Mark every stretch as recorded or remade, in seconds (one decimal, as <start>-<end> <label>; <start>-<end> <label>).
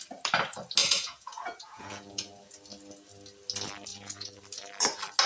0.0-0.8 recorded; 0.8-2.5 remade; 2.5-3.9 recorded; 3.9-4.4 remade; 4.4-5.3 recorded